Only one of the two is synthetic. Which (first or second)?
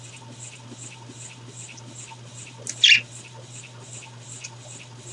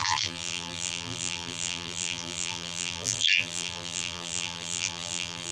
second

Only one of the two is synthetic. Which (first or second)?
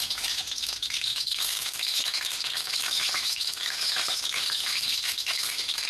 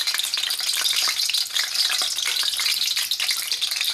first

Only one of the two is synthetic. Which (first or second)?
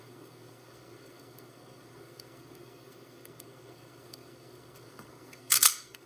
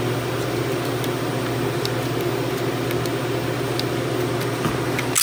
first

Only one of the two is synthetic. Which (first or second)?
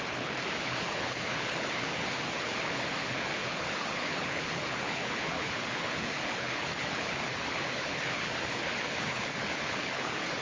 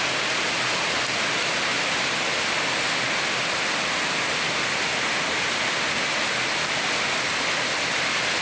first